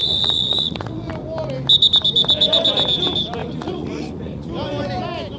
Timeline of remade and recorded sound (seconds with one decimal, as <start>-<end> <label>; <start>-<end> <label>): 0.0-1.1 remade; 1.1-3.4 recorded; 3.4-4.5 remade; 4.5-5.4 recorded